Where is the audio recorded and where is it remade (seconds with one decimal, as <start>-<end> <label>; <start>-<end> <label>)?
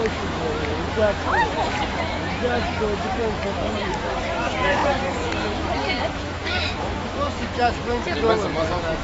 0.0-9.0 remade